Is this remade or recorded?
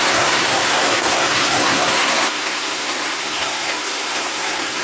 remade